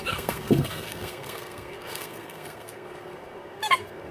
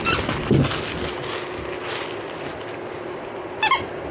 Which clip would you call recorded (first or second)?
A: second